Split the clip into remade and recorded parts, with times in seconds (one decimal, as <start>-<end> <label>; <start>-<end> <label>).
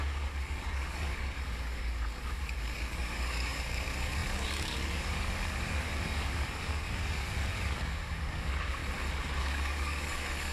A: 0.0-8.8 remade; 8.8-9.4 recorded; 9.4-10.5 remade